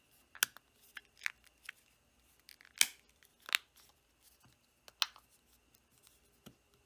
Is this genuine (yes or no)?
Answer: yes